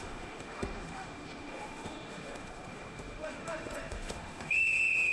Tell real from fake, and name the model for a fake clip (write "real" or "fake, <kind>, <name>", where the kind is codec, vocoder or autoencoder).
fake, autoencoder, DAC-VAE